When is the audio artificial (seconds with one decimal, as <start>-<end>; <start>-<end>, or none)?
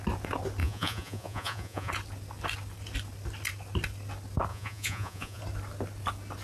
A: 0.6-1.9; 4.5-5.4